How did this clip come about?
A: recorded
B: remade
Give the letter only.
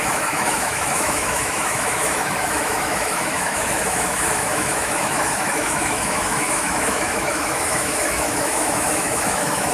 B